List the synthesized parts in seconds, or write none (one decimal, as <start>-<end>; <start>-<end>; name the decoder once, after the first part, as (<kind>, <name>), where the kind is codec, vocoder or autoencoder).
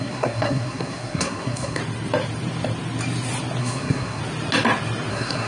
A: 0.0-1.8 (codec, SNAC); 3.6-4.2; 5.1-5.5